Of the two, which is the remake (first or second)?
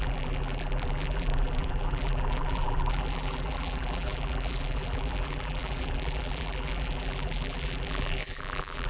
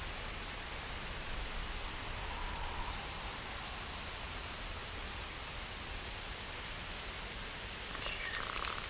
first